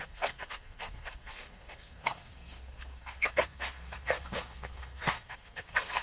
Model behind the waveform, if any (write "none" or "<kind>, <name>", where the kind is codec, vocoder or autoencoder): codec, SNAC